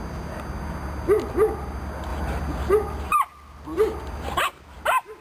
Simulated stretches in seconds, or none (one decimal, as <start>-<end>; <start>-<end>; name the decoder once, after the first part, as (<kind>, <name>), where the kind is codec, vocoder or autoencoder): none